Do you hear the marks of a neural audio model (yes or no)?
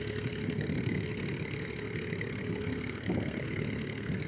yes